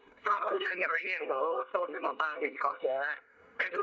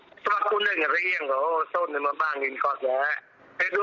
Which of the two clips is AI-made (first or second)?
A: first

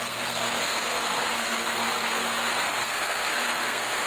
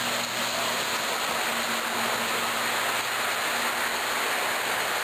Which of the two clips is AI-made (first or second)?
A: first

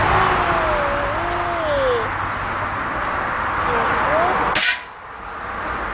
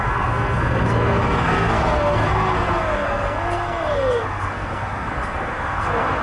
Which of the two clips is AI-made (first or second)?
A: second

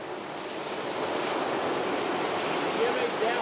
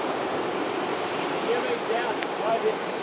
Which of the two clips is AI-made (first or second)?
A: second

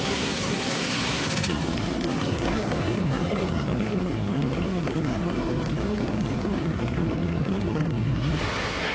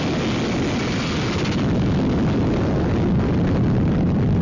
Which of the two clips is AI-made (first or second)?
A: first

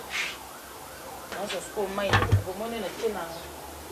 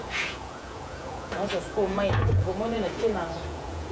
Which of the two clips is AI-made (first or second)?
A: second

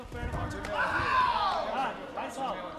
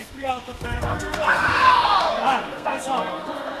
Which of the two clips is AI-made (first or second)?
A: second